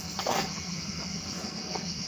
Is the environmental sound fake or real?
fake